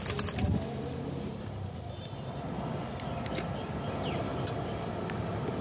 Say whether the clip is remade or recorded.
recorded